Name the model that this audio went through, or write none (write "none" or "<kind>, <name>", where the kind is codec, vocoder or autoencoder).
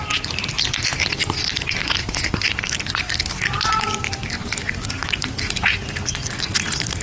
vocoder, BigVGAN v2